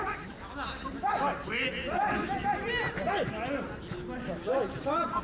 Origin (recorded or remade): recorded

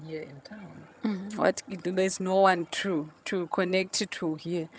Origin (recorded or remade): remade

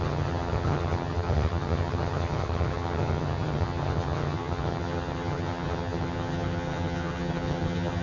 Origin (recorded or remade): remade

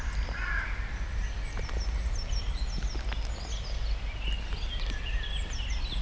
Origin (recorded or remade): recorded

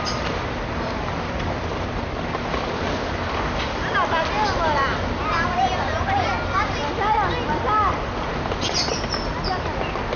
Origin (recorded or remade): recorded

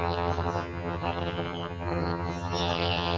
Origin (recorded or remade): remade